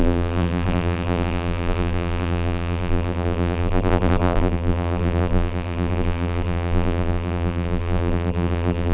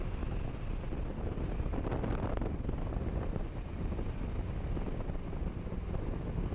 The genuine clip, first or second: second